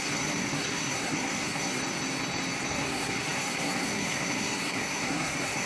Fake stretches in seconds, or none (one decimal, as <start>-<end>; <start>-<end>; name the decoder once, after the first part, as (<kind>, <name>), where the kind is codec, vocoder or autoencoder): 0.0-1.8 (codec, SNAC); 2.7-5.7